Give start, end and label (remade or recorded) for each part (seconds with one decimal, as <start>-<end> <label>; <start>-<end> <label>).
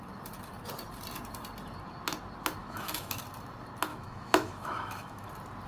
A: 0.0-2.6 recorded; 2.6-3.2 remade; 3.2-3.9 recorded; 3.9-5.3 remade; 5.3-5.7 recorded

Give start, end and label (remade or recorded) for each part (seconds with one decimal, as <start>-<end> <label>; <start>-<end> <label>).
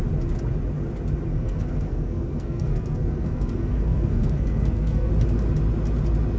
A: 0.0-1.3 recorded; 1.3-5.1 remade; 5.1-6.4 recorded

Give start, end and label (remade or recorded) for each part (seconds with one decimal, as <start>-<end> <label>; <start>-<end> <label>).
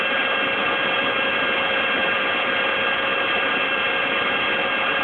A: 0.0-5.0 remade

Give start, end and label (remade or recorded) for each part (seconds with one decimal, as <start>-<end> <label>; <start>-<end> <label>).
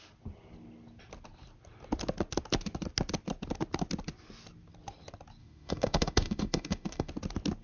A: 0.0-5.4 recorded; 5.4-7.1 remade; 7.1-7.6 recorded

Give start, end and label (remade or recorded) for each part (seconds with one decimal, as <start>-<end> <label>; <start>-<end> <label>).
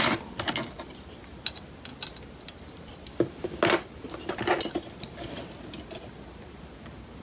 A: 0.0-7.2 recorded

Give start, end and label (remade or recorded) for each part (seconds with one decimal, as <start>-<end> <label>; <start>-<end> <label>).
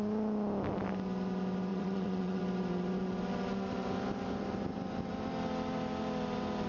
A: 0.0-1.7 recorded; 1.7-2.4 remade; 2.4-6.7 recorded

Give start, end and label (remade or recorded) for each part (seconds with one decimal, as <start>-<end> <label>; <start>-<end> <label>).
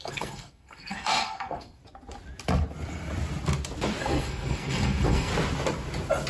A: 0.0-1.8 remade; 1.8-4.0 recorded; 4.0-5.3 remade; 5.3-6.3 recorded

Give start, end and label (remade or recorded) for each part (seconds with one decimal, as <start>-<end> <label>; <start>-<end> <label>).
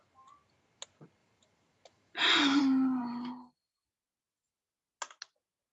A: 0.0-5.7 recorded